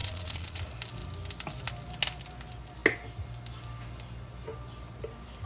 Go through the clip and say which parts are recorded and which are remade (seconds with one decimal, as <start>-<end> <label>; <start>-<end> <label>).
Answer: 0.0-0.6 remade; 0.6-5.5 recorded